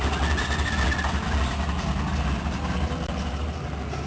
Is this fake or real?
real